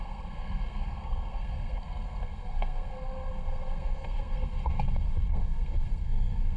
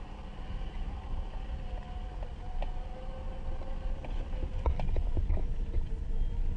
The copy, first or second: first